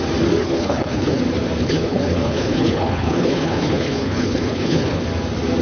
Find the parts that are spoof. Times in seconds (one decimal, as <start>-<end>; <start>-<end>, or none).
0.4-1.2; 1.6-5.0